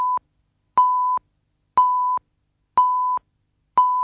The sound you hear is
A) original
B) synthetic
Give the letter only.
A